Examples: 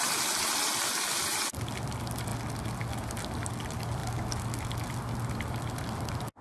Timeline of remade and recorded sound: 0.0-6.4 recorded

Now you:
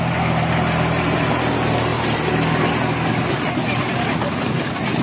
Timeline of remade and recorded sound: 0.0-5.0 recorded

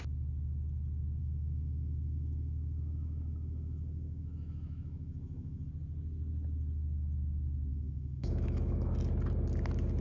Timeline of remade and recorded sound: 0.0-1.2 recorded; 1.2-5.7 remade; 5.7-7.7 recorded; 7.7-8.9 remade; 8.9-10.0 recorded

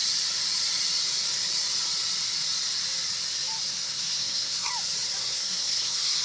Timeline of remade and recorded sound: 0.0-3.7 recorded; 3.7-4.7 remade; 4.7-5.2 recorded; 5.2-6.2 remade

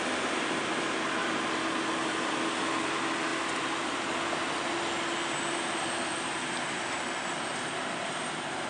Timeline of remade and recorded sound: 0.0-8.7 recorded